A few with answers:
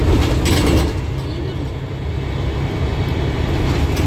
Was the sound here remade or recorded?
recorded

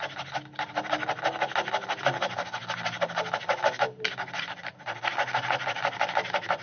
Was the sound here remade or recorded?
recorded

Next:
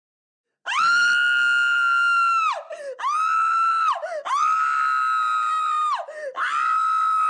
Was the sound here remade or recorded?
recorded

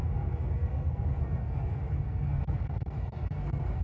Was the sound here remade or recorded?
remade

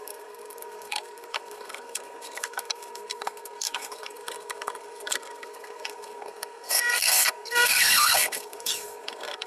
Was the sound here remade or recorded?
remade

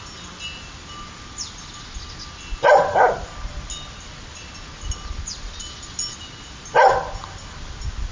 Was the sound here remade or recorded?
recorded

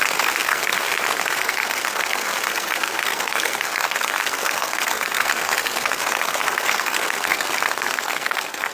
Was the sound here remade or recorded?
remade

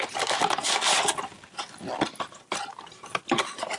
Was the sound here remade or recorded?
recorded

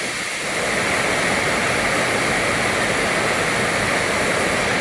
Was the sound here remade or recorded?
recorded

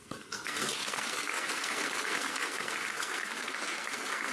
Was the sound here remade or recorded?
remade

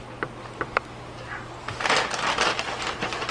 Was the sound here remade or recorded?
recorded